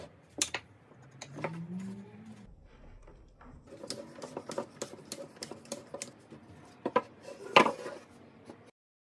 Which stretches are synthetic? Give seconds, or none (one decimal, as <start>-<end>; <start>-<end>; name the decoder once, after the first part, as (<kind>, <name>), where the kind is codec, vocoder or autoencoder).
none

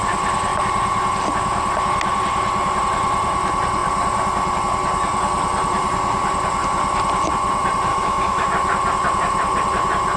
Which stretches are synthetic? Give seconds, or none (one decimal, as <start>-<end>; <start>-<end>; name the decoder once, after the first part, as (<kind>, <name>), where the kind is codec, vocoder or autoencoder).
7.9-8.5 (autoencoder, DAC-VAE)